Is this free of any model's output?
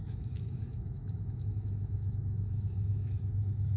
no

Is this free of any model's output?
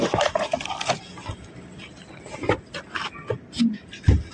yes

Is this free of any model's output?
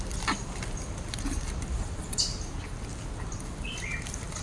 yes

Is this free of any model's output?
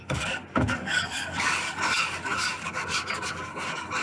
no